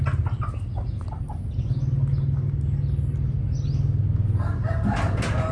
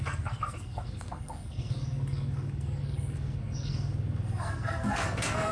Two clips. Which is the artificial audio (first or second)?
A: second